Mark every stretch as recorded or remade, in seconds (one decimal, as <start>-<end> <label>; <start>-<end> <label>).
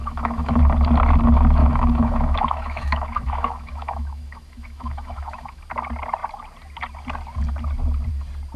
0.0-0.6 remade; 0.6-1.6 recorded; 1.6-5.6 remade; 5.6-8.6 recorded